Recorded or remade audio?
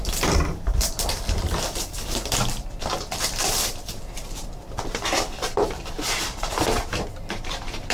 remade